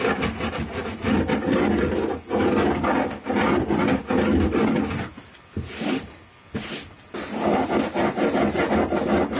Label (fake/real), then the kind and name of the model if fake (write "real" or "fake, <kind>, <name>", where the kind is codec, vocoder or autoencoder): real